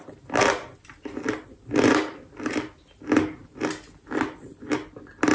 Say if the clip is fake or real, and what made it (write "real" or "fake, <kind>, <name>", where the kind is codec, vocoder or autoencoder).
real